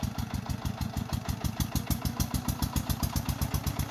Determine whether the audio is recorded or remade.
recorded